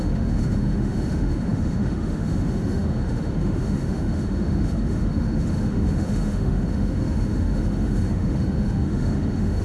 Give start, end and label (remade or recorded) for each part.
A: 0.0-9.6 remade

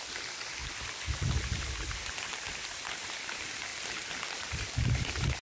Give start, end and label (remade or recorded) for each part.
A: 0.0-5.4 recorded